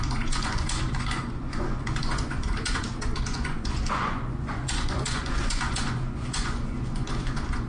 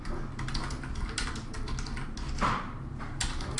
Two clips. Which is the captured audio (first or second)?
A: second